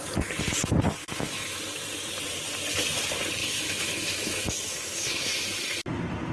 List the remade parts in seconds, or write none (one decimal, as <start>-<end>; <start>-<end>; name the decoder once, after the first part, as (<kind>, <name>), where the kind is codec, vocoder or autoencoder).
1.0-1.6 (autoencoder, DAC-VAE); 3.4-5.4